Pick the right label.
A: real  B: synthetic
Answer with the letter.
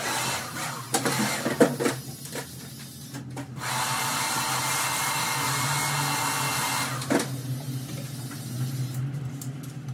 A